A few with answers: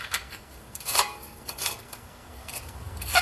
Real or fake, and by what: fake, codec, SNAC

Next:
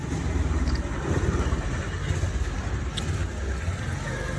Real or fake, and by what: real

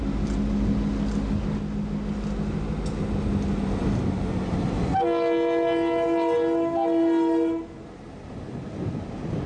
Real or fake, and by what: real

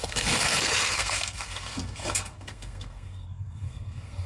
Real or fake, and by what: fake, codec, SNAC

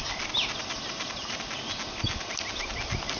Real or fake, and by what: real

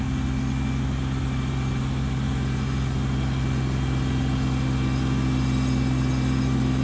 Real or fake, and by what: real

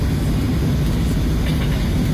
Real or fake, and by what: real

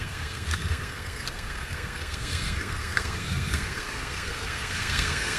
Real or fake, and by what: fake, codec, SNAC